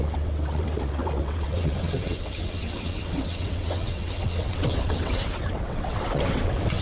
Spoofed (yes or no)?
yes